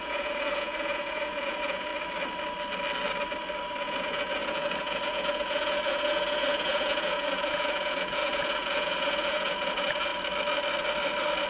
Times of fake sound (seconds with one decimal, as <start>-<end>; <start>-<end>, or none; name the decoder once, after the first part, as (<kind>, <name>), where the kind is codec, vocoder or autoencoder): 0.0-1.9 (vocoder, Vocos); 3.8-10.1